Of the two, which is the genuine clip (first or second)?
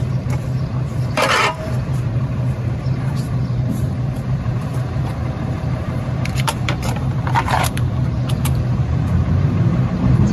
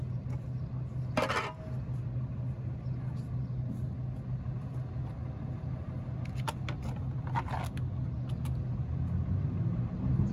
second